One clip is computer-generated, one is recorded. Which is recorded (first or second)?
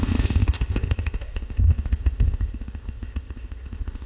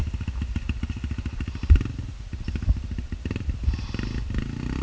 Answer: second